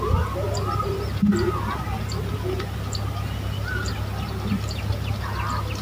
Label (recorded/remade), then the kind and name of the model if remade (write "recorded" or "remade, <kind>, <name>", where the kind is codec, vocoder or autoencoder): recorded